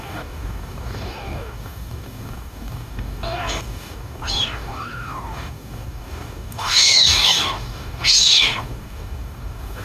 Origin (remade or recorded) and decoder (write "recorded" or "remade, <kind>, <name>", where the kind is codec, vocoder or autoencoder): remade, codec, DAC